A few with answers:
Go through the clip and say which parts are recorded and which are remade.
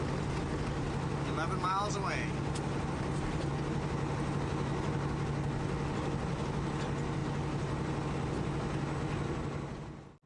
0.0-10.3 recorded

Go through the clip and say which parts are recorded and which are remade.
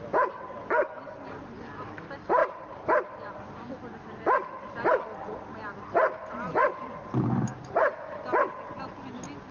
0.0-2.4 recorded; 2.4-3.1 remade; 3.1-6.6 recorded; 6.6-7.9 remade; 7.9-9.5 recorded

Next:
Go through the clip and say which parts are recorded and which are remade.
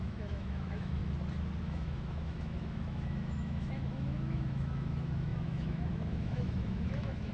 0.0-1.0 remade; 1.0-1.6 recorded; 1.6-7.3 remade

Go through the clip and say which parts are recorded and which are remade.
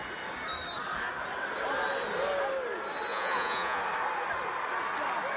0.0-3.1 recorded; 3.1-3.8 remade; 3.8-5.4 recorded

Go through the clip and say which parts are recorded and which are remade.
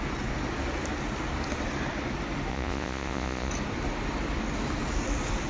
0.0-2.5 recorded; 2.5-3.5 remade; 3.5-5.5 recorded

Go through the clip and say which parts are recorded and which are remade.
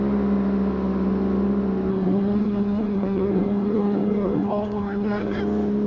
0.0-1.9 recorded; 1.9-5.4 remade; 5.4-5.9 recorded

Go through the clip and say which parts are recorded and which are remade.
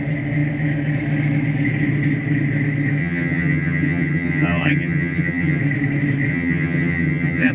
0.0-3.0 recorded; 3.0-5.6 remade; 5.6-6.3 recorded; 6.3-7.5 remade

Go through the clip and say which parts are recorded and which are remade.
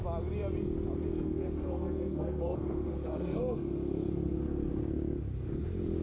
0.0-1.1 recorded; 1.1-4.7 remade; 4.7-6.0 recorded